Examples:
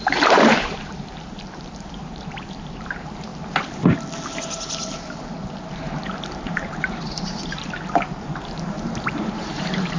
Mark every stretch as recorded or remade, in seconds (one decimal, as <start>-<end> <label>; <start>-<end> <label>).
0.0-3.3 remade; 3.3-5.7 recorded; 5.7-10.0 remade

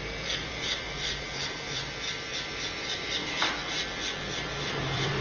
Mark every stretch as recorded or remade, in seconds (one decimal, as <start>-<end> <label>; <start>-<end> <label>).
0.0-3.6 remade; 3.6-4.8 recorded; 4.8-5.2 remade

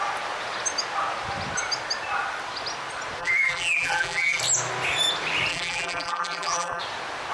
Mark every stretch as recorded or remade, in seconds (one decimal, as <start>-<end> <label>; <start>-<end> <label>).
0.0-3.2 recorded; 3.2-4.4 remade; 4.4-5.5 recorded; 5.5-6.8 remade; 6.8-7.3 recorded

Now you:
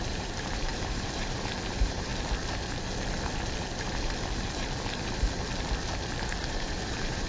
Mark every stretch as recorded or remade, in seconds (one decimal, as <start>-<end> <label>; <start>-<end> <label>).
0.0-2.1 remade; 2.1-6.5 recorded; 6.5-7.3 remade

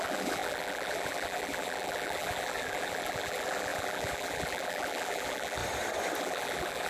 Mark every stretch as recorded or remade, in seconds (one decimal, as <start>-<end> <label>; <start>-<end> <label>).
0.0-5.6 remade; 5.6-6.2 recorded; 6.2-6.9 remade

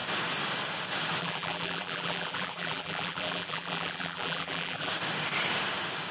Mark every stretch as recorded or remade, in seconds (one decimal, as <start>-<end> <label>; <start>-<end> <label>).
0.0-1.2 recorded; 1.2-4.9 remade; 4.9-6.1 recorded

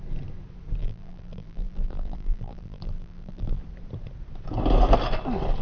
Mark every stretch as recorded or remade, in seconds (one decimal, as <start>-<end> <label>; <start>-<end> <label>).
0.0-0.8 recorded; 0.8-3.6 remade; 3.6-5.6 recorded

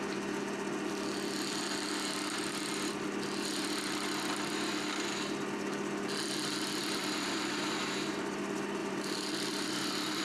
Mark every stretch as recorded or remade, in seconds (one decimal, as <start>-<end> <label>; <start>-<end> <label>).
0.0-7.0 recorded; 7.0-8.4 remade; 8.4-8.8 recorded; 8.8-10.2 remade